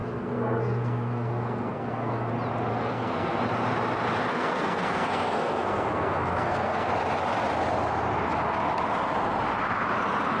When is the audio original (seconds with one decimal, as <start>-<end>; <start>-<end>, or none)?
2.3-2.7; 3.4-4.3; 6.9-10.4